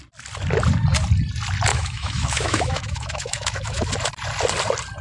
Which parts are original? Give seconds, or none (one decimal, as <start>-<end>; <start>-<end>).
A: 0.0-1.7; 3.9-5.0